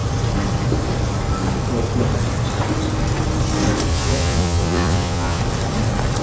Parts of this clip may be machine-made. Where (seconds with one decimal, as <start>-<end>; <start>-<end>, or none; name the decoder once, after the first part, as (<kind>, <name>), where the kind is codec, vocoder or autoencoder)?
3.9-5.4 (vocoder, Vocos)